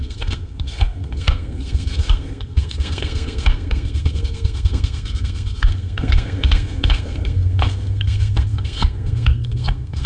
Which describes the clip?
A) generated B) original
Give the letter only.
A